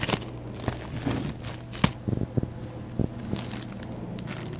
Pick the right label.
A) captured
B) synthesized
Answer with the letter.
A